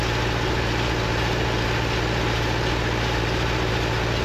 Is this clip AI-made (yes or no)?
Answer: no